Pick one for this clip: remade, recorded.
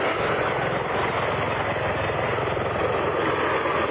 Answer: recorded